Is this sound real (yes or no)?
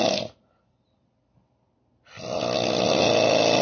yes